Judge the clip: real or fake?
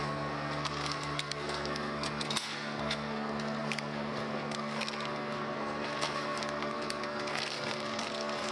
fake